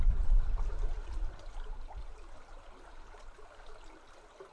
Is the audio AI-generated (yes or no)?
no